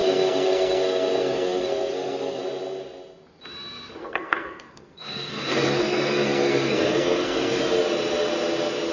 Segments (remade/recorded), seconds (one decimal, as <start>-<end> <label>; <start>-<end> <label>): 0.0-2.4 remade; 2.4-4.0 recorded; 4.0-7.6 remade; 7.6-8.9 recorded